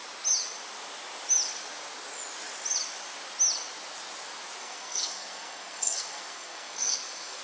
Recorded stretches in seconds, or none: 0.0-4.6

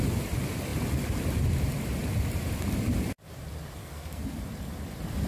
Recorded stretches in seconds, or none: 0.0-3.8; 4.4-5.3

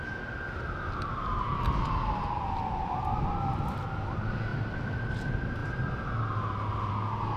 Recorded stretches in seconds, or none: 0.0-7.4